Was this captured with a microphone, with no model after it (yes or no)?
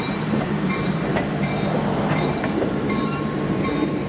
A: no